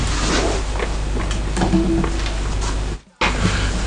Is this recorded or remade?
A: recorded